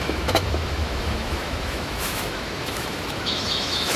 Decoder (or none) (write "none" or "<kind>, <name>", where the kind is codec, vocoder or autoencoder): autoencoder, DAC-VAE